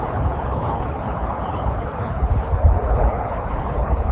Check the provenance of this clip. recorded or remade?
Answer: remade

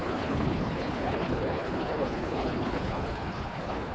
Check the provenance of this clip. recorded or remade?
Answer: remade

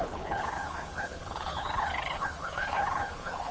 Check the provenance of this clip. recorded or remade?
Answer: remade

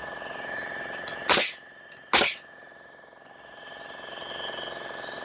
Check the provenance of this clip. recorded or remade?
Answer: recorded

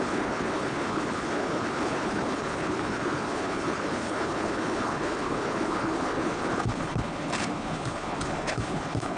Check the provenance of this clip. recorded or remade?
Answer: remade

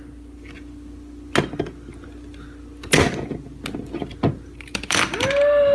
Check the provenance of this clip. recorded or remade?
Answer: recorded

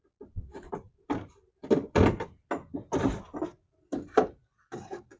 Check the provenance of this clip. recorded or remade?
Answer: recorded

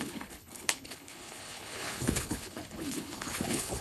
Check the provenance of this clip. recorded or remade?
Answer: remade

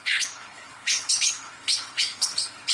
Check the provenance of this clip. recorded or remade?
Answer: remade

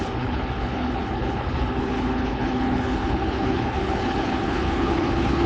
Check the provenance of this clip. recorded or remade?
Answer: remade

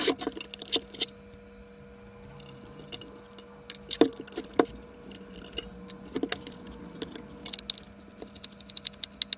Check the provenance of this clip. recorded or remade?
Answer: recorded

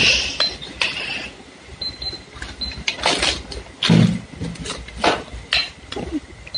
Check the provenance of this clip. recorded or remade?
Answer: recorded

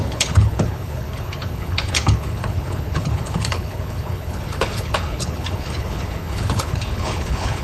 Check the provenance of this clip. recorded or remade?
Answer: remade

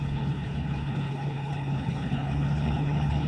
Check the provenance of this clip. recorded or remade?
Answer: remade